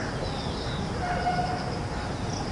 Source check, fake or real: real